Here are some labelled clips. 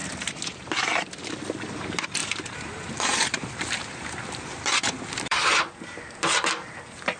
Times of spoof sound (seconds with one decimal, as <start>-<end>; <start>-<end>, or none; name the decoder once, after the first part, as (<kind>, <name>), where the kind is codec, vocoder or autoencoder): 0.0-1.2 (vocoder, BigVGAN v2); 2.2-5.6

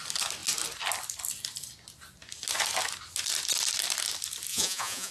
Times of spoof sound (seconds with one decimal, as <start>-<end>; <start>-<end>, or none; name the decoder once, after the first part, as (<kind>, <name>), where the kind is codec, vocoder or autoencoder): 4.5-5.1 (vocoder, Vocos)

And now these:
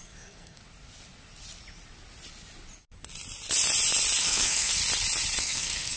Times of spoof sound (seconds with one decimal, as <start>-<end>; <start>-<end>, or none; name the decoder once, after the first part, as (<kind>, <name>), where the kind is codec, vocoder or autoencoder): 0.0-0.6 (codec, SNAC); 4.2-4.8; 5.4-6.0

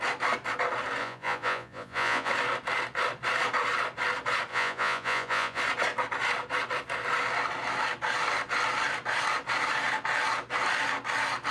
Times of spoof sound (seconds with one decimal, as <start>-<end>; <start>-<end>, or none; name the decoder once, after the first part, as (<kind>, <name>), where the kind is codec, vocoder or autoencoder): 1.0-2.3 (vocoder, Vocos); 4.5-5.6